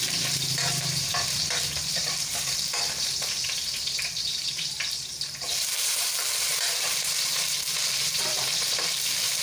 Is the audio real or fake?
fake